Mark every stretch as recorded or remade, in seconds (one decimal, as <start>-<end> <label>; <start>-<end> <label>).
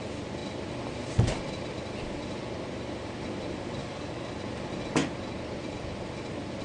0.0-3.8 recorded; 3.8-4.3 remade; 4.3-6.6 recorded